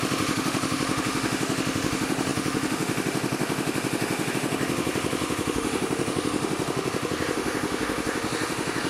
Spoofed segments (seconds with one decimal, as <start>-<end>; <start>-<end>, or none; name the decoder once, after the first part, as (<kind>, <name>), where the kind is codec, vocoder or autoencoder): 0.0-8.9 (autoencoder, DAC-VAE)

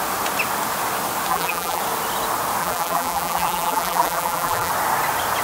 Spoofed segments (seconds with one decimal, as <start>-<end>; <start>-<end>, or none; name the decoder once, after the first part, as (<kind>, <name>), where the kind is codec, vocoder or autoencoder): 1.3-1.8 (vocoder, BigVGAN v2); 2.6-4.7

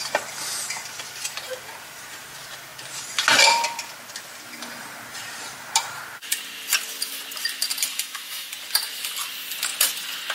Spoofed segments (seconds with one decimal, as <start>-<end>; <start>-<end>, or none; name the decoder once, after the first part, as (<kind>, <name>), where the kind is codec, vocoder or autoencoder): 7.9-8.5 (autoencoder, DAC-VAE)

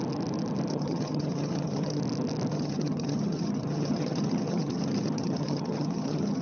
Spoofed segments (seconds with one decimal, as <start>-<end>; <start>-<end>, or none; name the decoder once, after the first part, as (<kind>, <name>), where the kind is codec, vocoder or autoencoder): 0.7-2.0 (vocoder, HiFi-GAN); 2.5-6.4

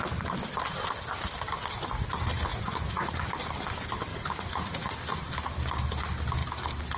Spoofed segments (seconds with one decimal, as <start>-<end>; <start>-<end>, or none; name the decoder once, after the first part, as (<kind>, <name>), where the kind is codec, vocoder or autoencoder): 2.5-3.2 (vocoder, Vocos); 4.1-4.9

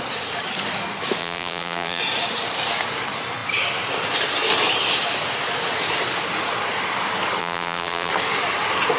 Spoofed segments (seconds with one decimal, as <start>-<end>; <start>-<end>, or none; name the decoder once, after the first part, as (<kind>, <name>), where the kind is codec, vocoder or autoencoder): 1.2-2.0 (vocoder, BigVGAN v2); 7.4-8.1